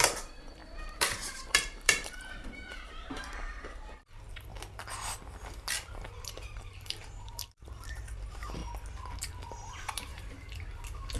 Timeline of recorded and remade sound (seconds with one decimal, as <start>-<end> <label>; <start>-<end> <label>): 0.0-4.5 remade; 4.5-6.2 recorded; 6.2-8.6 remade; 8.6-9.7 recorded; 9.7-10.1 remade; 10.1-11.2 recorded